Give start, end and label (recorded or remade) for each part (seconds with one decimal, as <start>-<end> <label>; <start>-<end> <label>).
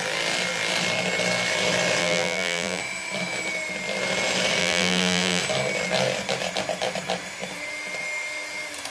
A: 0.0-2.0 recorded; 2.0-2.8 remade; 2.8-4.6 recorded; 4.6-5.4 remade; 5.4-8.9 recorded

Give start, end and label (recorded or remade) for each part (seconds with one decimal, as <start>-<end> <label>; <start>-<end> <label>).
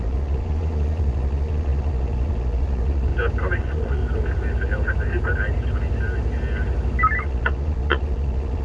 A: 0.0-3.1 remade; 3.1-3.6 recorded; 3.6-4.0 remade; 4.0-7.2 recorded; 7.2-8.6 remade